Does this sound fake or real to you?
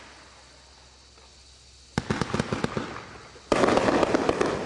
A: real